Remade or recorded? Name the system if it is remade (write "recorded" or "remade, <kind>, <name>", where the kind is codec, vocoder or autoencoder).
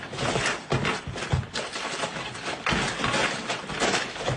recorded